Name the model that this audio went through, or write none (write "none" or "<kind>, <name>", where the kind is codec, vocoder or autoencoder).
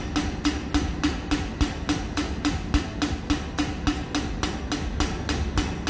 none